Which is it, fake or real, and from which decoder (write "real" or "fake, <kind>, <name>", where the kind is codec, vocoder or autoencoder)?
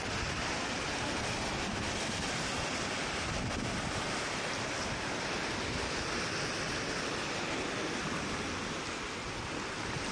real